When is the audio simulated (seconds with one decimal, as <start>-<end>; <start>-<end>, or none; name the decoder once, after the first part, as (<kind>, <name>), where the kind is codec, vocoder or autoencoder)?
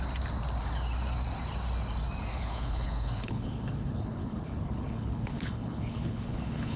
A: 2.3-6.8 (codec, HILCodec)